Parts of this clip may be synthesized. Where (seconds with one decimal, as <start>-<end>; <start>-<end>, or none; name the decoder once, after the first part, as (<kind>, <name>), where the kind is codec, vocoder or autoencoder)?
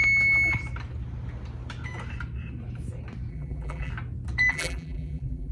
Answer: 3.3-3.9 (vocoder, BigVGAN v2); 4.5-5.5